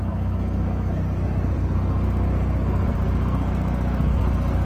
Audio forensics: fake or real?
fake